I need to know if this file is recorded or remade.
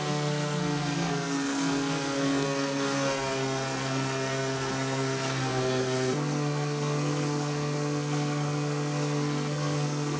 remade